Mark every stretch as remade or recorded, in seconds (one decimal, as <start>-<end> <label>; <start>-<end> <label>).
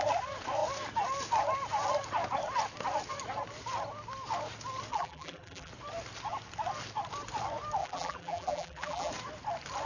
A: 0.0-4.9 recorded; 4.9-5.7 remade; 5.7-7.8 recorded; 7.8-9.1 remade; 9.1-9.9 recorded